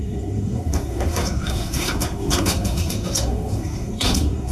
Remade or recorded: remade